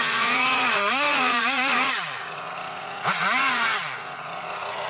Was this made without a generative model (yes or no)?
no